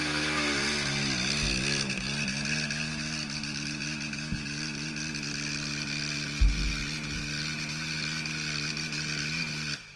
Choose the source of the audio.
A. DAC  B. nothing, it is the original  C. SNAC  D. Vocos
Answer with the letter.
B